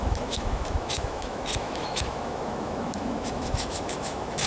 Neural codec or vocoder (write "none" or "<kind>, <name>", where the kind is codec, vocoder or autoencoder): autoencoder, DAC-VAE